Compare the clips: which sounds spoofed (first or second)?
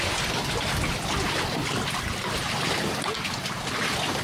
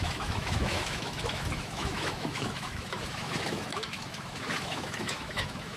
second